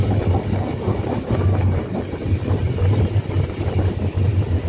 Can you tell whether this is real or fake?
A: real